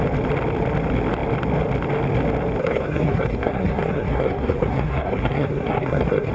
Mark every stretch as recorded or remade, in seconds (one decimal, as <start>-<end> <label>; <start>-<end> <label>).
0.0-2.6 recorded; 2.6-6.3 remade